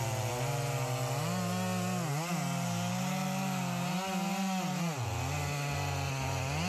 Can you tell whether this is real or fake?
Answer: real